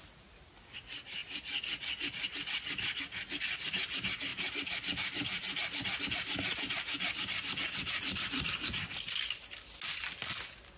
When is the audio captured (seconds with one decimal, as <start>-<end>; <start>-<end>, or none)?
0.0-10.8